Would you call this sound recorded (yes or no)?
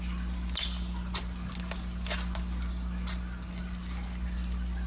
yes